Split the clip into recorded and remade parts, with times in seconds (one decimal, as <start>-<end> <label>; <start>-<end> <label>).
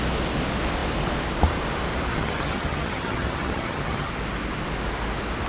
0.0-2.1 recorded; 2.1-4.1 remade; 4.1-5.5 recorded